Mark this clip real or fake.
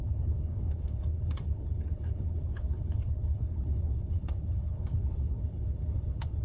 fake